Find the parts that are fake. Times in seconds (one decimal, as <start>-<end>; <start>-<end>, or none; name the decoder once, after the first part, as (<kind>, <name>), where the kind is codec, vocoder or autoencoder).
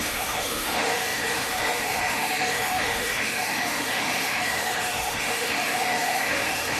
0.0-6.8 (autoencoder, DAC-VAE)